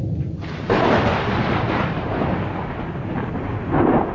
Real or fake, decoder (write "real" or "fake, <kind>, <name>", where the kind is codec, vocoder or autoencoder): real